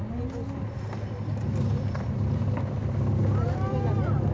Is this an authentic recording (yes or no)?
yes